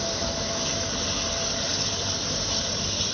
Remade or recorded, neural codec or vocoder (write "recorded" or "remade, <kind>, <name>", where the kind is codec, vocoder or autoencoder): recorded